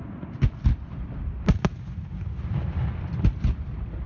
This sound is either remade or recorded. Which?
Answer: recorded